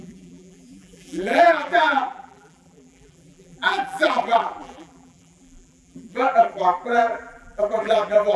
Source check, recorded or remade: remade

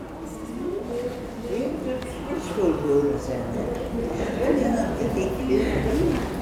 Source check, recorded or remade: recorded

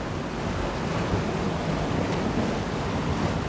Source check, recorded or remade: recorded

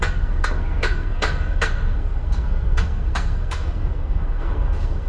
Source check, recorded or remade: remade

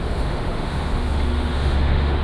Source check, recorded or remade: remade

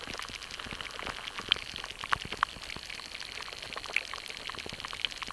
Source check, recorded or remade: recorded